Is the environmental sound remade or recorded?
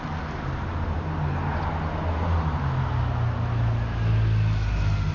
recorded